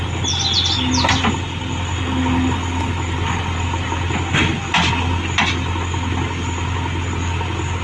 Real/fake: real